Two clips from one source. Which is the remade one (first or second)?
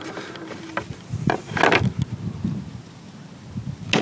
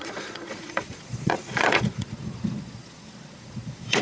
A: second